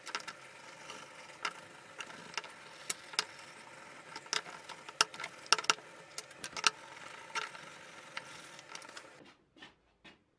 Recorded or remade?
recorded